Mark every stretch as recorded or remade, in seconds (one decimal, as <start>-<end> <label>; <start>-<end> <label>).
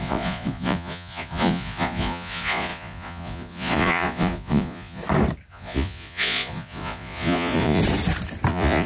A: 0.0-5.0 remade; 5.0-5.5 recorded; 5.5-7.8 remade; 7.8-8.5 recorded; 8.5-8.9 remade